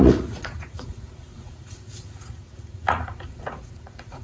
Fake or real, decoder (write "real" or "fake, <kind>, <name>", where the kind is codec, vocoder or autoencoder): fake, vocoder, Vocos